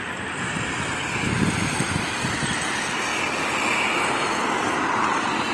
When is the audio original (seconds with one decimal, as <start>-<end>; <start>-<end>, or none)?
0.0-5.5